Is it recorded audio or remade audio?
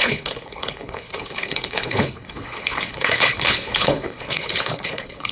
remade